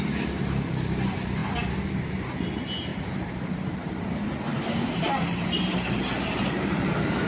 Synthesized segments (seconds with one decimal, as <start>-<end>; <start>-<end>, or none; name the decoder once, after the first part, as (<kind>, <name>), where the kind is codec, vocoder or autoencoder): 2.9-4.0 (vocoder, BigVGAN v2); 4.5-7.3